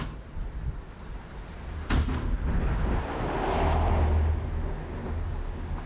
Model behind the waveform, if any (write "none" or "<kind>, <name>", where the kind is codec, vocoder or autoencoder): none